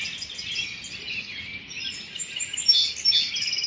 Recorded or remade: recorded